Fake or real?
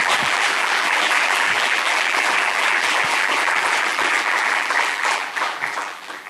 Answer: fake